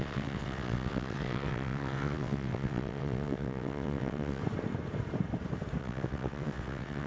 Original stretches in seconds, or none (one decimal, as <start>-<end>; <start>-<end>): 4.4-5.8